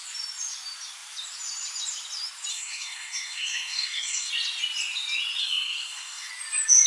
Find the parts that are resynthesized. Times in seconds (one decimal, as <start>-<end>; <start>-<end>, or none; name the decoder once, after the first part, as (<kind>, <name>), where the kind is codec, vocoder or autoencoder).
2.5-4.3 (codec, SNAC); 5.4-6.3